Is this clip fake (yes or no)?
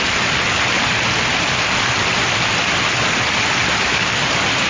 no